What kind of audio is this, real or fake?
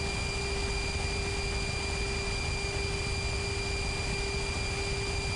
real